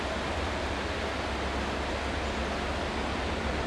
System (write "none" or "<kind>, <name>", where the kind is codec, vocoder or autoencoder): none